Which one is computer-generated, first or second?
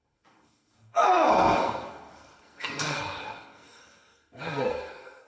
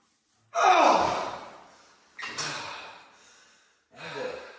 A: first